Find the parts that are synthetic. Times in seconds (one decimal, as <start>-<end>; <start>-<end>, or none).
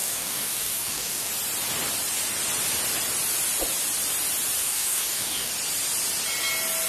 0.0-1.3; 4.6-5.5